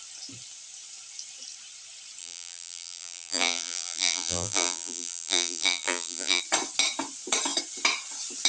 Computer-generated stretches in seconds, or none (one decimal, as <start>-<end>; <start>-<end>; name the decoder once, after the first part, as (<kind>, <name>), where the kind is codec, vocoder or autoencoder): 2.2-6.4 (vocoder, BigVGAN v2)